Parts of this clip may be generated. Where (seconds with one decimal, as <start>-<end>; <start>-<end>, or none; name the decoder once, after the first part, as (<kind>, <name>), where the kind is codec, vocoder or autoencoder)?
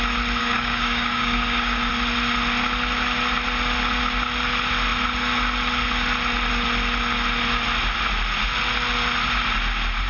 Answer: 0.4-1.9 (codec, DAC)